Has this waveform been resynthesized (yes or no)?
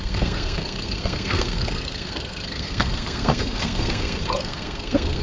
yes